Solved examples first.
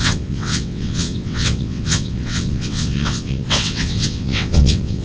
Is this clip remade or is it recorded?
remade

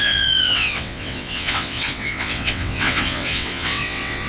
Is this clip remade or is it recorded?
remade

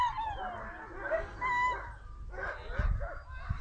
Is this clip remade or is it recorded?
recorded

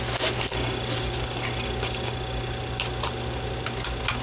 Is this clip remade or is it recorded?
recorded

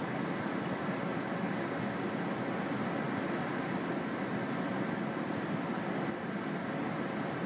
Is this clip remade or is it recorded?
recorded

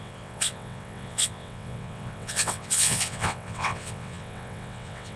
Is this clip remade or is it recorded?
remade